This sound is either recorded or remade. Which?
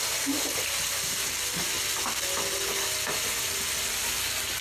recorded